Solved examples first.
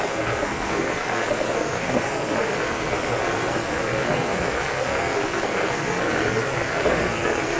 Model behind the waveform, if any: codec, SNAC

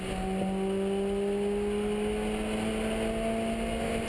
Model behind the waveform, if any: none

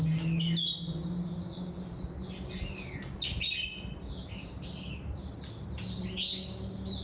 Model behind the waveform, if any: none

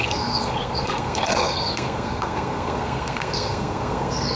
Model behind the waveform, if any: codec, SNAC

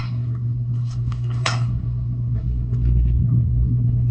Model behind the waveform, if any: codec, SNAC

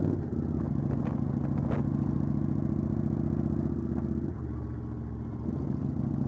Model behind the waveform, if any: none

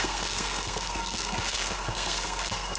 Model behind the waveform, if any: codec, SNAC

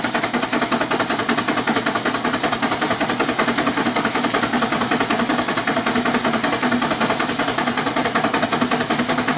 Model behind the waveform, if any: none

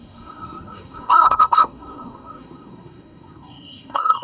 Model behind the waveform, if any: codec, SNAC